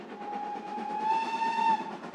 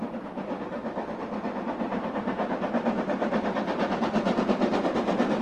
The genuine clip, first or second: first